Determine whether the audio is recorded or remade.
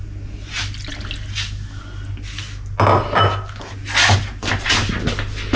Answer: recorded